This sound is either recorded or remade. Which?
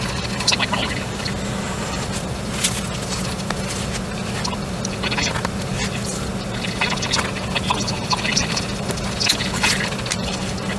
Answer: recorded